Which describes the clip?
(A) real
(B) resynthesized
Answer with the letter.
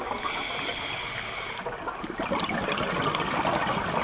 A